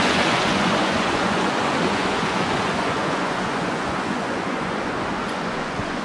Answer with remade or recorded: remade